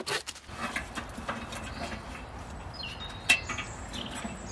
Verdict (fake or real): real